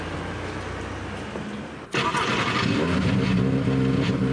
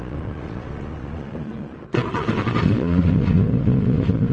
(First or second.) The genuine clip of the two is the first